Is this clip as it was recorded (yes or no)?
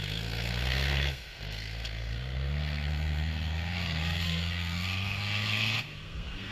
no